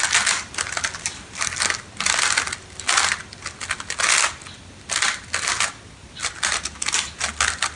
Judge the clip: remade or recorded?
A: recorded